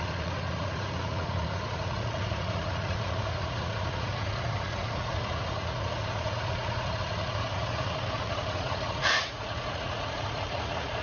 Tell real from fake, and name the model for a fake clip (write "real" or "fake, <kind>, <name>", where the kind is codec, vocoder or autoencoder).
fake, vocoder, Vocos